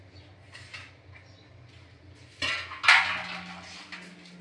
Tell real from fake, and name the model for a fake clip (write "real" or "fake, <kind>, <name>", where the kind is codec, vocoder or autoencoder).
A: real